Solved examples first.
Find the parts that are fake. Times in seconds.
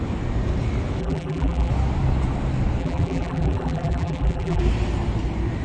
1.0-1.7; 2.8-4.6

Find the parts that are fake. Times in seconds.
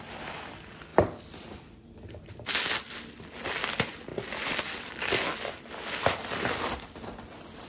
none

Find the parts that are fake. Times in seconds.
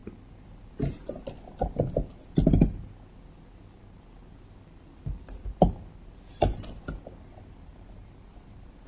none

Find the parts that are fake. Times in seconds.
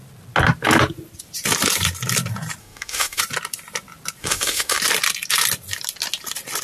2.6-3.2; 4.2-4.8